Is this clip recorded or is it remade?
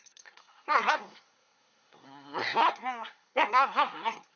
remade